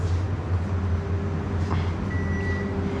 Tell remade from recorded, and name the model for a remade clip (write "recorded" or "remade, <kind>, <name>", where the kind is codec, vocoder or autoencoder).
recorded